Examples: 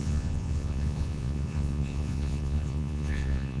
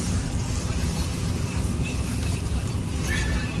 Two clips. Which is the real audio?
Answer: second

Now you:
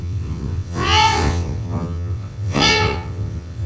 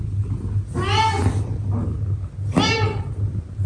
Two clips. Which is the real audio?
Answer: second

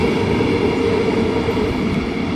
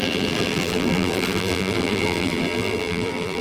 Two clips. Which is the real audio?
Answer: first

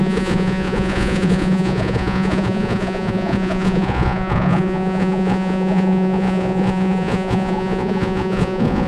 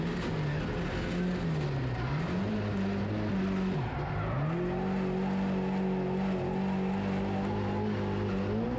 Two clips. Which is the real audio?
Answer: second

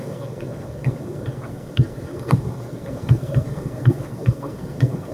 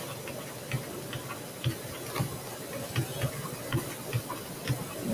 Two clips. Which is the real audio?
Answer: second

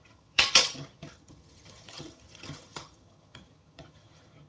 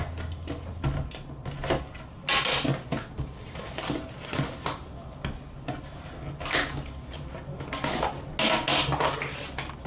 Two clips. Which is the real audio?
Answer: second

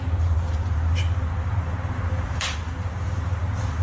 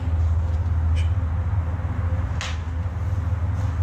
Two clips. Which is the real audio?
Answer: second